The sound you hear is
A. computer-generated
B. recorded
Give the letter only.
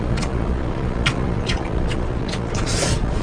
A